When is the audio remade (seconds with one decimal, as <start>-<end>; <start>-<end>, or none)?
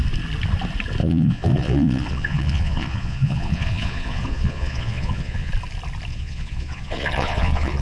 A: 1.0-5.5; 6.1-7.8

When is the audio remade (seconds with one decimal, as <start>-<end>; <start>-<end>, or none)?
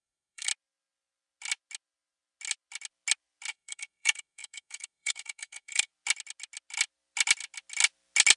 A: 0.0-0.5; 3.5-5.9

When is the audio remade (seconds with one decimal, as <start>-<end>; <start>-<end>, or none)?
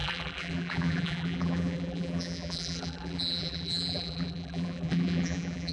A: 0.0-5.7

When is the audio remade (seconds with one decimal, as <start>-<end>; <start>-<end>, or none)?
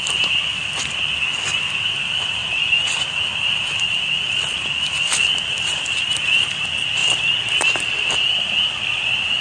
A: 2.4-5.8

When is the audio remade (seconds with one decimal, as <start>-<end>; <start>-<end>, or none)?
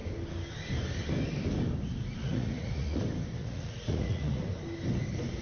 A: 2.2-3.0; 3.4-4.4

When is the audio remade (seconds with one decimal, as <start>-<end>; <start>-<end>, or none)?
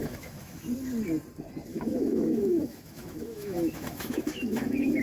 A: 0.0-0.6; 1.7-5.0